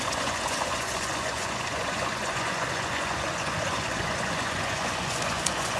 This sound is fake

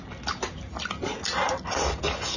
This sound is real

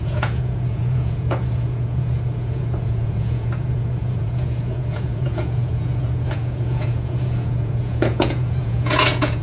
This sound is fake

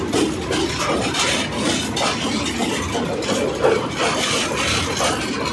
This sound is real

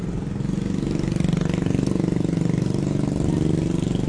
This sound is real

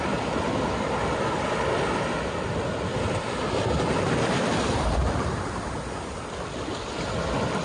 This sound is real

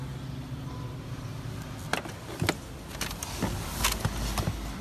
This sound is real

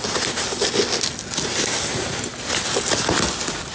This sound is real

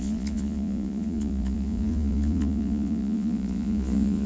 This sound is fake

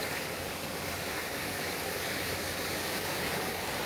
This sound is fake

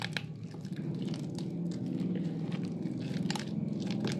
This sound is real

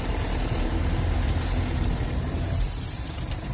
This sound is fake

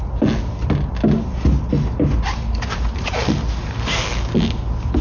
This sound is real